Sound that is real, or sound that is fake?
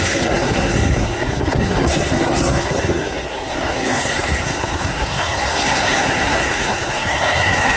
fake